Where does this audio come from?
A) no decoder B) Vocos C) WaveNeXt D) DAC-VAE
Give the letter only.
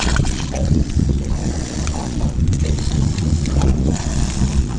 B